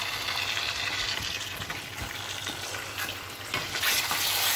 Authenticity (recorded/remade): recorded